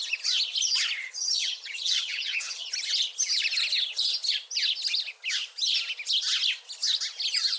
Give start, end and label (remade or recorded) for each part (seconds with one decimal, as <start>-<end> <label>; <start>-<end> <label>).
0.0-1.0 recorded; 1.0-2.7 remade; 2.7-7.6 recorded

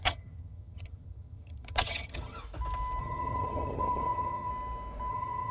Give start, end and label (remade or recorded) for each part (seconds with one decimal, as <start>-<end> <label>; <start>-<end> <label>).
0.0-2.4 remade; 2.4-3.0 recorded; 3.0-4.5 remade; 4.5-5.1 recorded; 5.1-5.5 remade

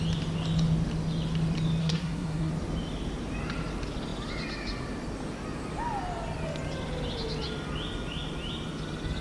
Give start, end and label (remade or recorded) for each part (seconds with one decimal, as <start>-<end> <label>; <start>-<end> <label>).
0.0-1.8 recorded; 1.8-2.5 remade; 2.5-9.2 recorded

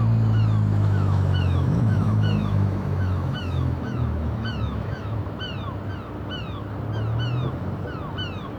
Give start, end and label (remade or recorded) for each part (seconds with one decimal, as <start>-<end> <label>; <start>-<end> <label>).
0.0-0.7 recorded; 0.7-5.2 remade; 5.2-8.6 recorded

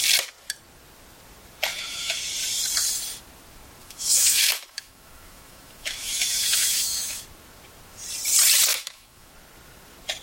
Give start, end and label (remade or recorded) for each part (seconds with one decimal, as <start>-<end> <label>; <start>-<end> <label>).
0.0-1.7 recorded; 1.7-2.2 remade; 2.2-3.8 recorded; 3.8-7.2 remade; 7.2-8.7 recorded; 8.7-9.3 remade; 9.3-10.2 recorded